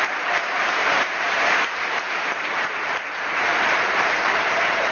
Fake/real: fake